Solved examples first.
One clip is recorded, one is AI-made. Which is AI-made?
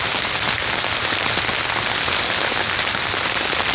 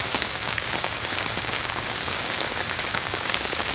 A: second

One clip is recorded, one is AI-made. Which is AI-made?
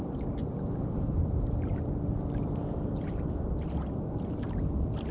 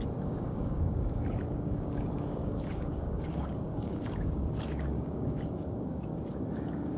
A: second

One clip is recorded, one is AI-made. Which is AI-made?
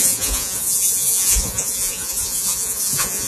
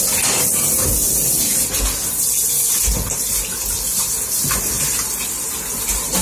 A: first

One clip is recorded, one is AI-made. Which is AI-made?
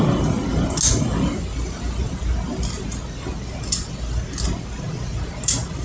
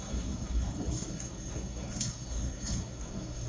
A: second